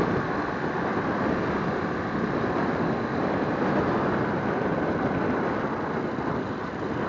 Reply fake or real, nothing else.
real